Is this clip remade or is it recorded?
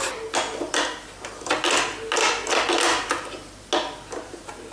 recorded